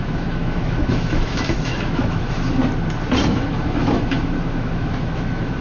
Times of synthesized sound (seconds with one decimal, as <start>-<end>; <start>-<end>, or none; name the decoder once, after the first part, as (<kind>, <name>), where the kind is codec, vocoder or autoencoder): 0.0-2.6 (autoencoder, DAC-VAE); 3.3-5.6